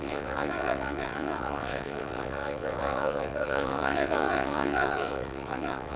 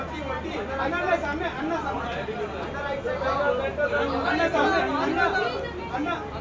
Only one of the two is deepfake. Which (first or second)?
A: first